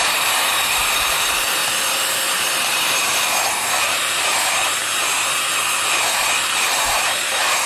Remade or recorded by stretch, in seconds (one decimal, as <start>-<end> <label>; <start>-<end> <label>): 0.0-1.6 remade; 1.6-2.4 recorded; 2.4-4.8 remade; 4.8-6.5 recorded; 6.5-7.7 remade